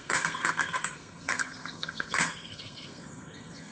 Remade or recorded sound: remade